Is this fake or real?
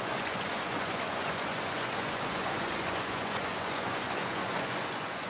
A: fake